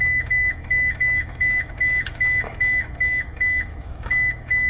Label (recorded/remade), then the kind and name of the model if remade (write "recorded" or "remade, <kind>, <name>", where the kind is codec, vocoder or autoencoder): remade, autoencoder, DAC-VAE